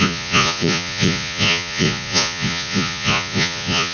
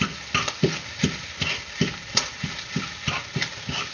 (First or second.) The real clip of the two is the second